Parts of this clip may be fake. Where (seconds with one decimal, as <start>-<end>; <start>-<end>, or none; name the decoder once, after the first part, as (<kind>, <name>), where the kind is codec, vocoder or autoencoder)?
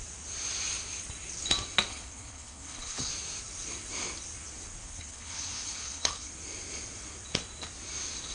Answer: 1.9-3.1 (codec, HILCodec); 4.8-6.3